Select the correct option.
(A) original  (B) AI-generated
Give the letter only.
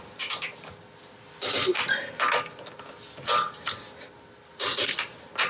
A